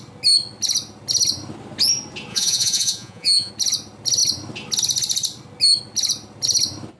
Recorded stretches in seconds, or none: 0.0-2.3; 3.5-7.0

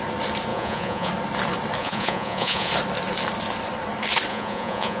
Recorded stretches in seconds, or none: 0.0-0.5; 1.1-1.8; 2.7-4.3

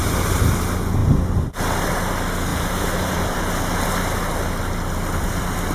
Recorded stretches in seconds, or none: 0.5-2.5; 3.4-5.7

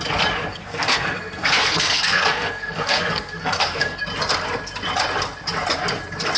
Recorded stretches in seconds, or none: 0.0-0.5; 4.0-6.4

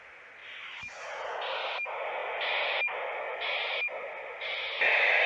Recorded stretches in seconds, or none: 0.0-5.3

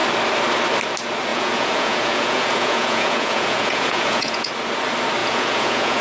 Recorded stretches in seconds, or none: 0.0-1.3; 4.5-5.2

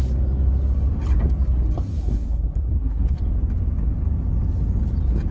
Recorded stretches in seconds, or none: 0.0-1.9; 3.2-5.3

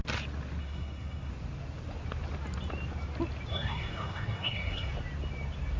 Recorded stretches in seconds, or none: 0.0-0.6; 1.3-3.5; 4.9-5.8